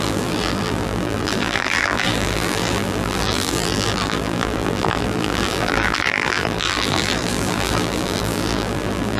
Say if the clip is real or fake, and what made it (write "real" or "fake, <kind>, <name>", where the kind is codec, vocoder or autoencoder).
fake, vocoder, BigVGAN v2